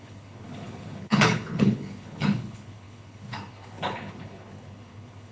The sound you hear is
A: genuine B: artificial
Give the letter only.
B